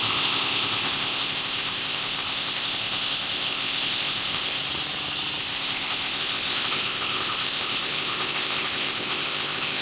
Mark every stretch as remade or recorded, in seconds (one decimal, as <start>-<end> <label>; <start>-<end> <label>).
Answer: 0.0-4.6 remade; 4.6-5.4 recorded; 5.4-9.8 remade